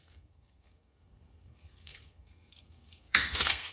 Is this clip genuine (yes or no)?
no